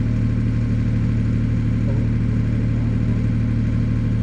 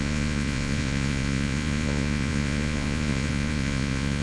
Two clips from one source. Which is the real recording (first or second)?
first